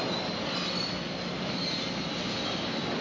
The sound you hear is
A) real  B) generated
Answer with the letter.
A